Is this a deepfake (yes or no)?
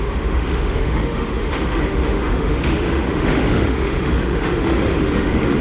yes